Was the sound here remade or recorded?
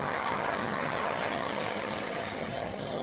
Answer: remade